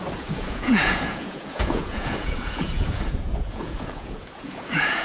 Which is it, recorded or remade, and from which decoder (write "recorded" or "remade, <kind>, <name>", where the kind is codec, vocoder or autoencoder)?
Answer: remade, vocoder, Vocos